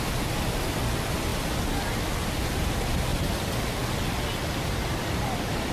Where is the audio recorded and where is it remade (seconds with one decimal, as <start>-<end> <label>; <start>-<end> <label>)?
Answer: 0.0-1.3 remade; 1.3-2.1 recorded; 2.1-3.1 remade; 3.1-4.9 recorded; 4.9-5.7 remade